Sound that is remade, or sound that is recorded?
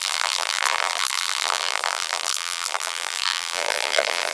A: remade